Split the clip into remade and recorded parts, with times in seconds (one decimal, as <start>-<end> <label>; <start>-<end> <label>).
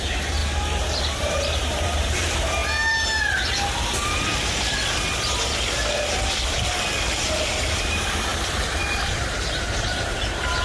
0.0-2.6 remade; 2.6-7.5 recorded; 7.5-10.6 remade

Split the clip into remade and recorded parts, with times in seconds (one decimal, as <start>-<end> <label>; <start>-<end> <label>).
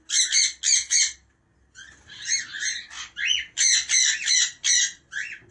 0.0-3.2 recorded; 3.2-4.3 remade; 4.3-5.5 recorded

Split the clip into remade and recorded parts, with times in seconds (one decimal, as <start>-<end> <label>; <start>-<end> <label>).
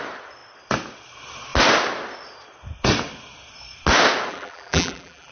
0.0-4.3 recorded; 4.3-5.3 remade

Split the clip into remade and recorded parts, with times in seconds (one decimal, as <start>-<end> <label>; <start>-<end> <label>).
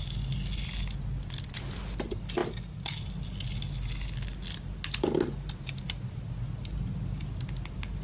0.0-8.0 recorded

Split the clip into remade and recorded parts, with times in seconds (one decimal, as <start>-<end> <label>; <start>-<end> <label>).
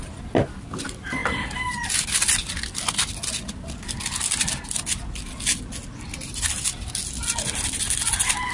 0.0-8.5 recorded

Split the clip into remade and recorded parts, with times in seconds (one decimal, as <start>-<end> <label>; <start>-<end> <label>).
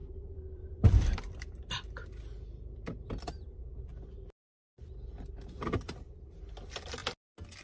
0.0-3.9 remade; 3.9-4.5 recorded; 4.5-7.0 remade; 7.0-7.6 recorded